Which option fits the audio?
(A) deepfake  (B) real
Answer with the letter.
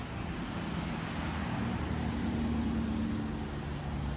B